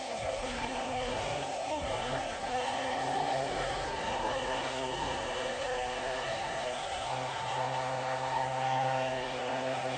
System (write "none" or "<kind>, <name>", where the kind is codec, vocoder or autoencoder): codec, SNAC